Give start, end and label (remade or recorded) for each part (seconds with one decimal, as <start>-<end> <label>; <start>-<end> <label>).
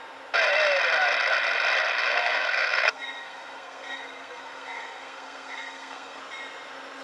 0.0-2.0 recorded; 2.0-6.2 remade; 6.2-7.0 recorded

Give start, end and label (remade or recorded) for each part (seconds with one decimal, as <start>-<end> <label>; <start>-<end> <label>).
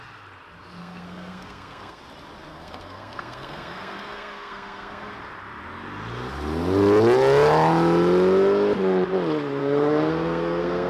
0.0-0.8 recorded; 0.8-2.0 remade; 2.0-2.5 recorded; 2.5-5.1 remade; 5.1-9.6 recorded; 9.6-10.9 remade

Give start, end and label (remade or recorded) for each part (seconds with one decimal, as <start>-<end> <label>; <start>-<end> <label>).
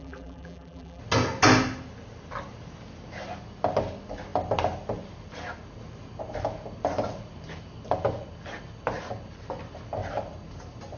0.0-1.0 remade; 1.0-11.0 recorded